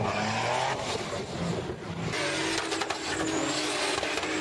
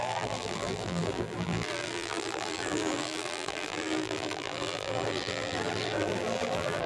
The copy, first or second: second